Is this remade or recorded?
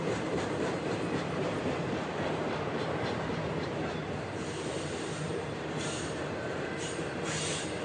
remade